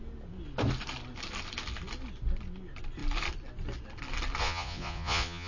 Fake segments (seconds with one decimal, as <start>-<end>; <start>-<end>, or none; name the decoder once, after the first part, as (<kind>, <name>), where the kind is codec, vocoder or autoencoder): 4.4-5.5 (vocoder, Vocos)